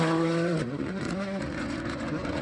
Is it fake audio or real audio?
fake